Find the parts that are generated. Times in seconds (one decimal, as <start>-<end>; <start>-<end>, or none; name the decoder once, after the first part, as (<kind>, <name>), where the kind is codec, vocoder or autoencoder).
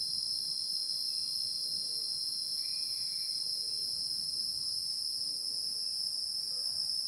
2.7-6.5 (vocoder, BigVGAN v2)